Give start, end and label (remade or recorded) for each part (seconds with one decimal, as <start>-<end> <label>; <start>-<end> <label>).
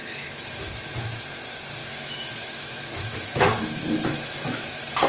0.0-1.2 remade; 1.2-1.8 recorded; 1.8-5.1 remade